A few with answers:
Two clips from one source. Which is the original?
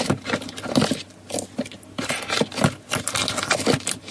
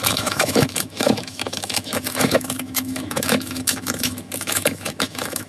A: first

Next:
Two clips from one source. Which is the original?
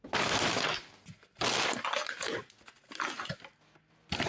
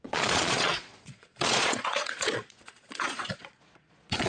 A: first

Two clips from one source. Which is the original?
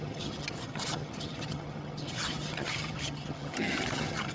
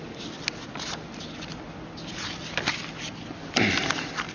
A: second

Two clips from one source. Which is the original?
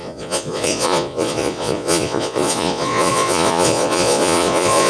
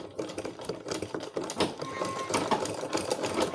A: second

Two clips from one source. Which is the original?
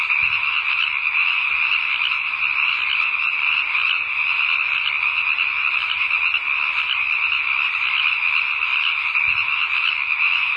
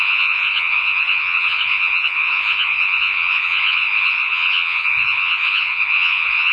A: first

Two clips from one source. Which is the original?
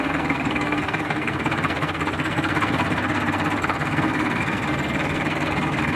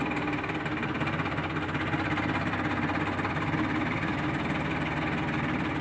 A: second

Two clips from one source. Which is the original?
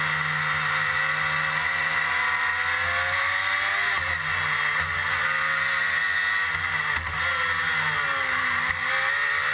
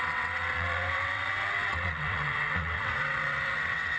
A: first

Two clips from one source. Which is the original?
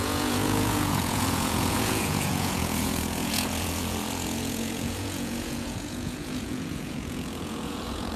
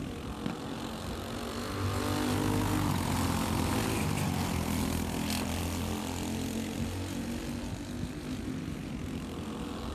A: second